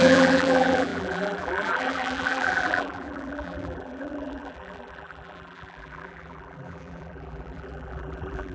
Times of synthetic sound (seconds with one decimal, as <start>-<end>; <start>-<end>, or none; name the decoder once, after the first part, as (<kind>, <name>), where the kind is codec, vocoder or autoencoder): 0.0-8.5 (vocoder, BigVGAN v2)